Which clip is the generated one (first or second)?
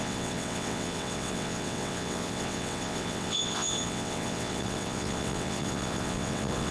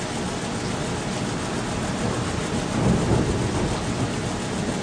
first